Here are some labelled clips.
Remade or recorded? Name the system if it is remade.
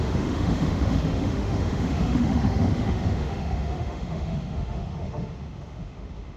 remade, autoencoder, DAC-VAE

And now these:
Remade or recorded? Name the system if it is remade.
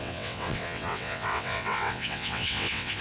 remade, vocoder, WaveNeXt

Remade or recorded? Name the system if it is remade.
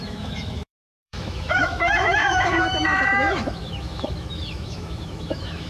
remade, autoencoder, DAC-VAE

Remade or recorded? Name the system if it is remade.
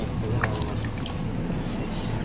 recorded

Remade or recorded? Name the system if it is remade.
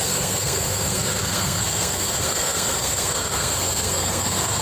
remade, codec, SNAC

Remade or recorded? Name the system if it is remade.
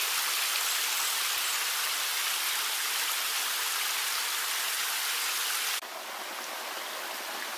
recorded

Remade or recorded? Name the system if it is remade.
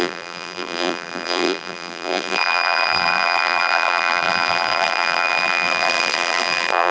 remade, vocoder, BigVGAN v2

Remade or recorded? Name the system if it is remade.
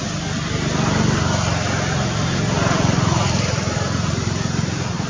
recorded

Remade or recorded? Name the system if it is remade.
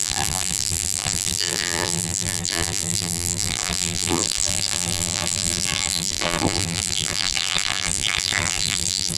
remade, vocoder, BigVGAN v2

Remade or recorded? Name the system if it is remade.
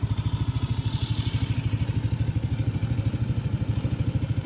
recorded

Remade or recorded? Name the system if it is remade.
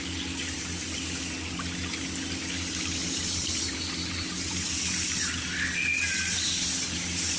recorded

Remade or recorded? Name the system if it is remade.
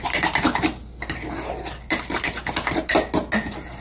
recorded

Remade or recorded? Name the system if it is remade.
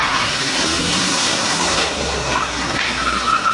remade, codec, SNAC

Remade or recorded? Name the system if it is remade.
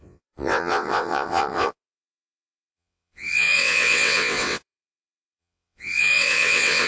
remade, vocoder, WaveNeXt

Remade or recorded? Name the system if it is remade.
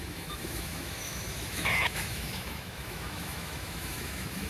remade, autoencoder, DAC-VAE